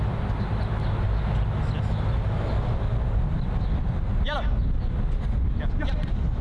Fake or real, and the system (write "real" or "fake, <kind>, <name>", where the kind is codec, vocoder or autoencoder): real